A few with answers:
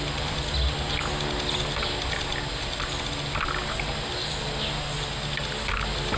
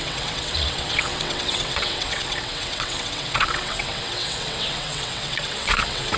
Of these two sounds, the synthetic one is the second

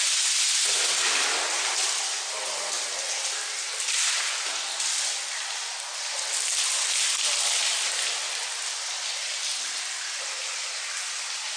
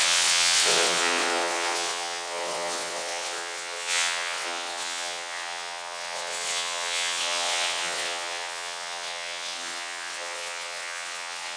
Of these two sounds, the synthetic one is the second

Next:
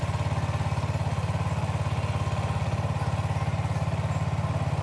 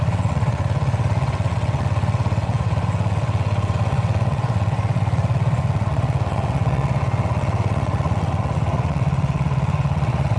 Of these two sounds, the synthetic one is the second